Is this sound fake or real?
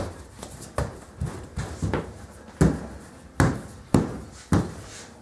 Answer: real